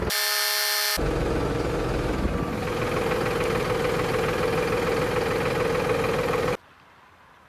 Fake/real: real